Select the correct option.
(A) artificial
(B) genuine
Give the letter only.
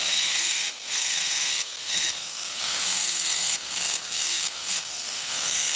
A